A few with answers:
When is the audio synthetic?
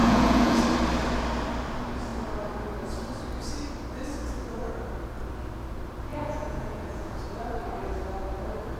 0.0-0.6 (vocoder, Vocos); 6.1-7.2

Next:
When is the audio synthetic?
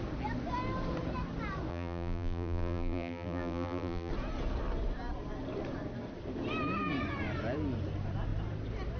1.7-4.1 (vocoder, BigVGAN v2)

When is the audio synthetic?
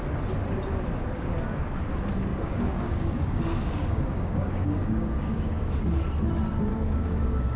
2.3-5.8 (codec, DAC); 6.7-7.6